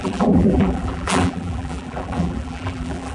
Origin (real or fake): fake